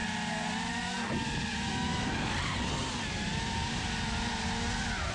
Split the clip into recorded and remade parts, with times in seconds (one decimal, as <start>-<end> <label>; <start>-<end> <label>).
0.0-3.3 recorded; 3.3-4.2 remade; 4.2-5.1 recorded